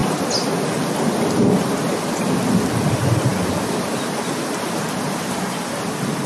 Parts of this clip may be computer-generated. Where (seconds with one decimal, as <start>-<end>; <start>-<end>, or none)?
none